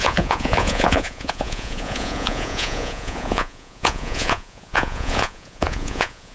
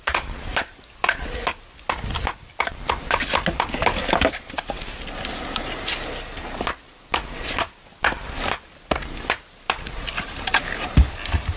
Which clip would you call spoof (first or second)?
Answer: first